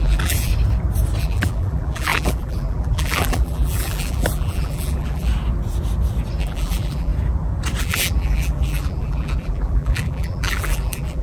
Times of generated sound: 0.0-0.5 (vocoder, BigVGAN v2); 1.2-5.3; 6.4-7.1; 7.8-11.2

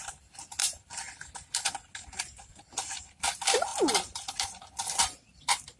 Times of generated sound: 0.6-1.1 (vocoder, BigVGAN v2); 3.7-5.8

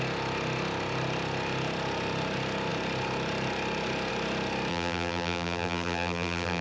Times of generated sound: 4.7-6.6 (vocoder, BigVGAN v2)

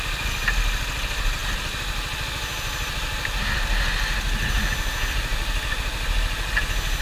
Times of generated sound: none

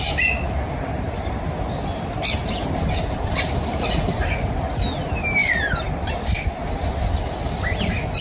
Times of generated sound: 5.4-6.7 (vocoder, BigVGAN v2)

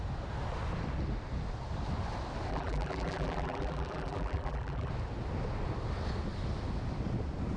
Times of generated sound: 2.5-4.9 (vocoder, BigVGAN v2)